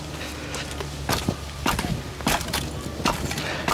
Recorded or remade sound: recorded